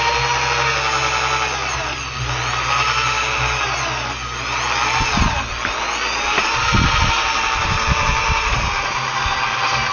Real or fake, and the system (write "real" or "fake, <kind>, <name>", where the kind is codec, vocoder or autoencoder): real